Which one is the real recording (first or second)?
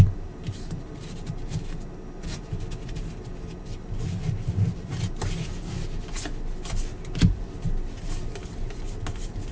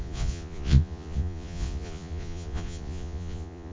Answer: first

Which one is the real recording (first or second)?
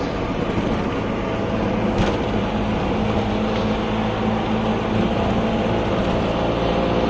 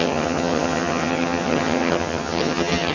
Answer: first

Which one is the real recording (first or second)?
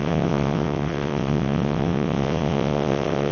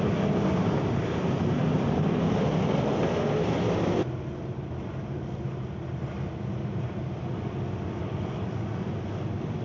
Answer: second